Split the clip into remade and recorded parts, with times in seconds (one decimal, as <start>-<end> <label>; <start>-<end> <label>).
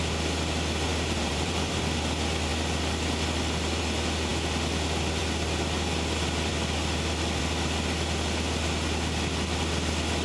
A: 0.0-0.9 recorded; 0.9-1.8 remade; 1.8-10.2 recorded